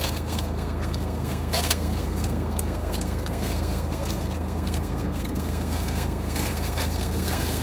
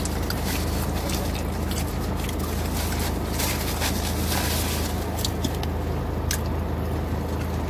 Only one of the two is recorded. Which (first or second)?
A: second